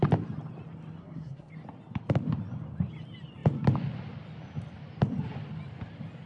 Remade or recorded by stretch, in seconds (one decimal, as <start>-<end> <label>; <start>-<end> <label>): 0.0-1.0 recorded; 1.0-1.5 remade; 1.5-6.3 recorded